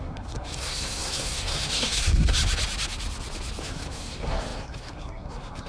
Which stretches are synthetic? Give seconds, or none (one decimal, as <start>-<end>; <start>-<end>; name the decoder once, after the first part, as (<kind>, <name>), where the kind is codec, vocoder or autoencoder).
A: 0.0-2.4 (codec, SNAC); 3.6-5.7